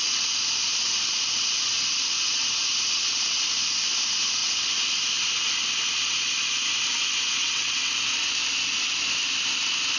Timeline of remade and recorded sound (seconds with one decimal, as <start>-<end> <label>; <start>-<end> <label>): 0.0-7.4 recorded; 7.4-7.9 remade; 7.9-10.0 recorded